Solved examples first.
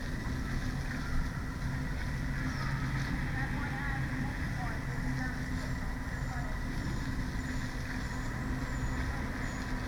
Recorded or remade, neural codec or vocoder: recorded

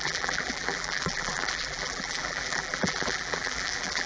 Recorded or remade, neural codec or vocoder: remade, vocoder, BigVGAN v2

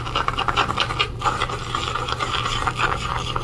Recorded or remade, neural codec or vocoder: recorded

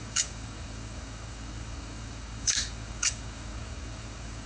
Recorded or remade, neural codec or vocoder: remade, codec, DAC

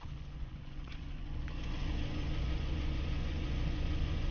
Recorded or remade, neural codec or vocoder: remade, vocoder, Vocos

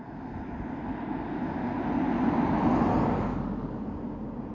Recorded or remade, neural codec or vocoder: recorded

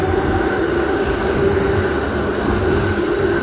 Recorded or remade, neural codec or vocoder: recorded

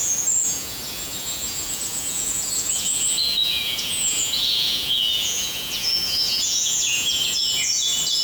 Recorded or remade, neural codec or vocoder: remade, vocoder, Vocos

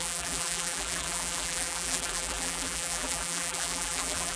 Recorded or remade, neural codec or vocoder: remade, vocoder, BigVGAN v2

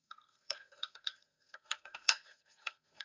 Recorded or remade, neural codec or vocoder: remade, codec, SNAC